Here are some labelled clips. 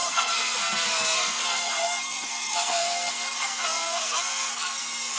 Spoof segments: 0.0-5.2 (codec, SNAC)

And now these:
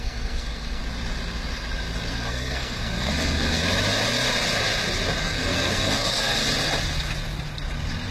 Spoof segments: 0.0-0.8 (codec, SNAC); 2.1-3.6; 5.2-6.4

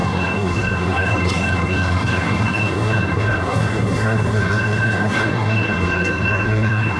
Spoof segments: 0.0-7.0 (codec, SNAC)

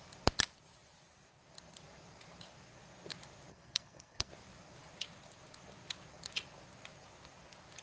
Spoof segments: 3.5-4.3 (codec, SNAC)

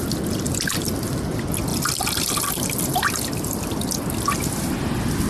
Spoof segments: none

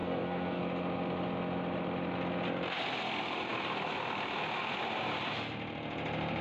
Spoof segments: 0.0-0.6 (codec, SNAC)